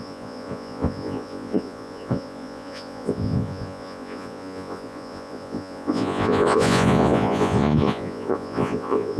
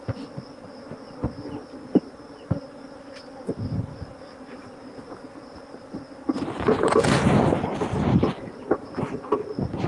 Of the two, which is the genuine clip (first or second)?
second